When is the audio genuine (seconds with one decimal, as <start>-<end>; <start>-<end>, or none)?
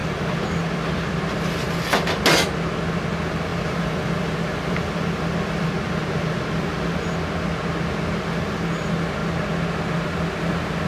1.2-3.5; 7.1-10.9